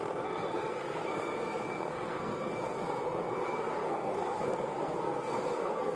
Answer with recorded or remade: remade